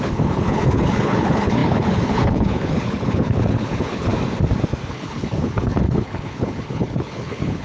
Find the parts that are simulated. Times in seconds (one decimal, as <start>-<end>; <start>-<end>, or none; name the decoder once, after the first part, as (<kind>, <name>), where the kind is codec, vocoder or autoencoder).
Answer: 0.0-4.1 (codec, HILCodec); 4.9-7.6